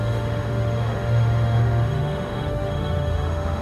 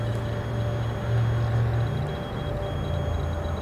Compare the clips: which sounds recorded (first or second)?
second